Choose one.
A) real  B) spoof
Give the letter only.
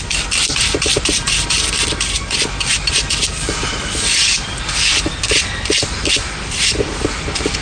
B